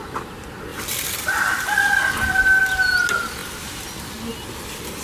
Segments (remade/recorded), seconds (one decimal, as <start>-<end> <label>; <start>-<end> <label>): 0.0-0.7 recorded; 0.7-2.6 remade; 2.6-5.0 recorded